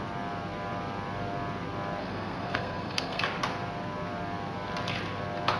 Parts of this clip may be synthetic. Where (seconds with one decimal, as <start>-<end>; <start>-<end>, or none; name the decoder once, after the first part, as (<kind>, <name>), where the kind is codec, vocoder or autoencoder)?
2.0-3.2 (codec, SNAC)